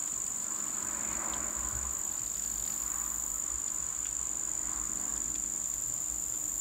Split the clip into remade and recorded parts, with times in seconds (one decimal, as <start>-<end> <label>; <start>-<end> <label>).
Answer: 0.0-6.6 recorded